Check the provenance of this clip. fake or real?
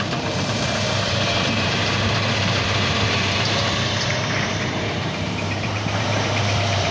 fake